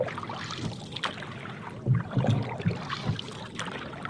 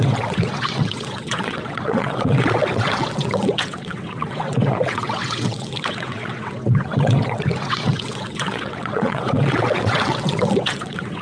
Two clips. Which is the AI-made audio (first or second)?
second